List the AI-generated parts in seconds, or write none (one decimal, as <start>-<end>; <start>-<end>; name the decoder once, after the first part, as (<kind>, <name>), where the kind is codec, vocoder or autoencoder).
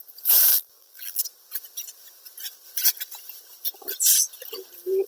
0.5-1.2 (vocoder, BigVGAN v2)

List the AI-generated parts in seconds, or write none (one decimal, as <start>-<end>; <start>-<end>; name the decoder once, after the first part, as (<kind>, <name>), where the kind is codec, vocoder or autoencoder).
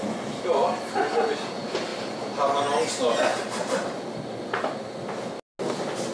1.9-2.6 (vocoder, BigVGAN v2)